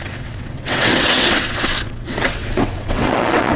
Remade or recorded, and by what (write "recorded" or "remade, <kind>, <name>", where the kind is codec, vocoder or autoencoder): remade, vocoder, WaveNeXt